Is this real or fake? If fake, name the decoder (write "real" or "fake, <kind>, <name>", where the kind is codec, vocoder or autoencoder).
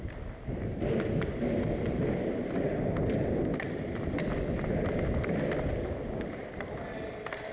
real